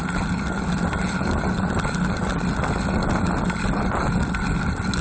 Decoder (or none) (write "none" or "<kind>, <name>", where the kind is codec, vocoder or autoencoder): none